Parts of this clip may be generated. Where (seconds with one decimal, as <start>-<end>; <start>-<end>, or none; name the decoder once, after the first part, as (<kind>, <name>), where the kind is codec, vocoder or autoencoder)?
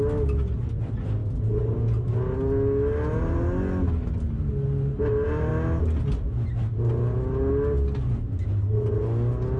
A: none